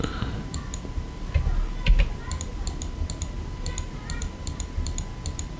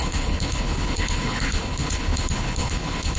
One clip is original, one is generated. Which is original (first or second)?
first